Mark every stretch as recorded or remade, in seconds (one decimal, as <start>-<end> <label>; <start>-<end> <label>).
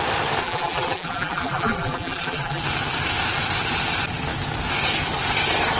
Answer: 0.0-0.4 recorded; 0.4-2.6 remade; 2.6-5.8 recorded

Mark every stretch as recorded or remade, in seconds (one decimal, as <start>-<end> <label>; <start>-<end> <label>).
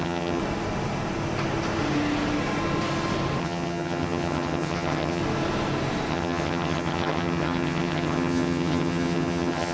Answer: 0.0-0.4 remade; 0.4-3.4 recorded; 3.4-5.2 remade; 5.2-6.1 recorded; 6.1-9.7 remade